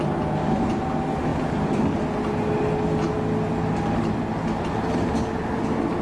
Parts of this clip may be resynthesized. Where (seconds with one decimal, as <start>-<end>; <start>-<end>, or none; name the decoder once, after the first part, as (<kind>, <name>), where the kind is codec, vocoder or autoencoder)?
none